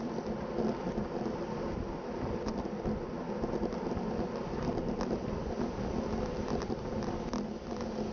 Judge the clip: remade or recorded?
recorded